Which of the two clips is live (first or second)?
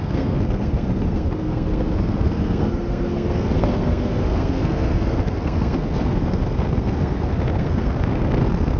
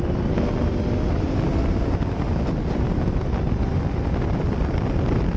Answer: second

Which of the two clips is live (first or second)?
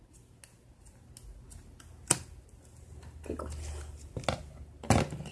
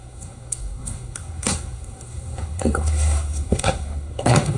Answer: first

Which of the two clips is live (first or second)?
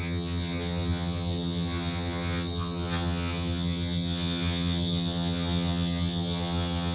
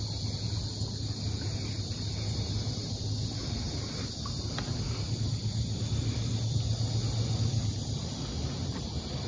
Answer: second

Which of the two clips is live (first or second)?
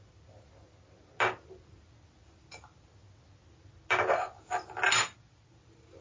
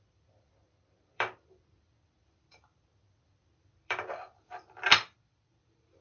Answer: first